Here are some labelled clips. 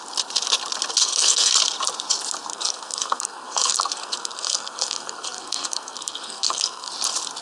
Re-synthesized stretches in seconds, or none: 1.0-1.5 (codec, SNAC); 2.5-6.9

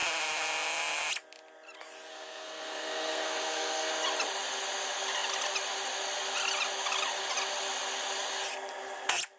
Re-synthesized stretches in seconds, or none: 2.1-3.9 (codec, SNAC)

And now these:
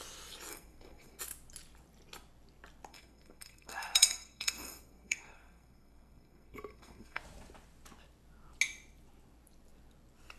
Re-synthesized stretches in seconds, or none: 0.5-1.2 (codec, SNAC); 2.9-7.2